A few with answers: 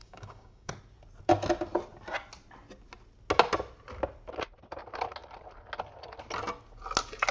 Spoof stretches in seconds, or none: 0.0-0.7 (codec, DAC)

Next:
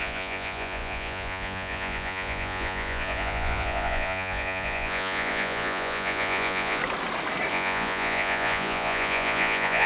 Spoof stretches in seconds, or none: 0.0-6.8 (vocoder, Vocos); 7.5-9.9

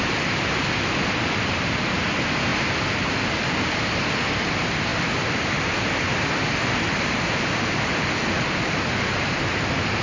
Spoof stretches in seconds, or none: 4.9-10.0 (vocoder, BigVGAN v2)

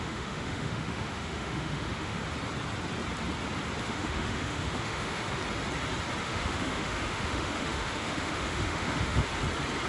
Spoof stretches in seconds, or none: 0.0-2.2 (autoencoder, DAC-VAE); 3.8-5.4; 6.2-9.3

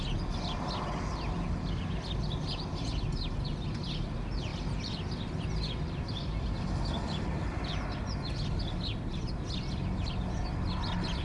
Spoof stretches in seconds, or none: none

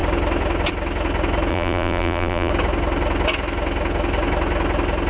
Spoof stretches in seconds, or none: 1.5-2.5 (vocoder, BigVGAN v2)

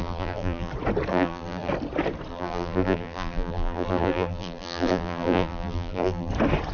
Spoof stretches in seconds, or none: 0.0-0.7 (vocoder, BigVGAN v2); 1.1-1.7; 2.3-6.3